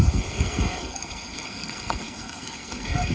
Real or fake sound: fake